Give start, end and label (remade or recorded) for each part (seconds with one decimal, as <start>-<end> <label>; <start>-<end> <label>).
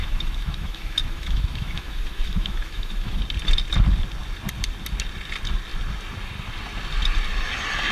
0.0-3.2 remade; 3.2-7.9 recorded